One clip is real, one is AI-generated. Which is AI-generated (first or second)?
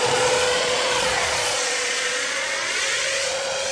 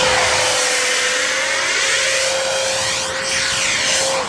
first